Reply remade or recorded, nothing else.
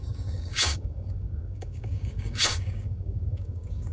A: remade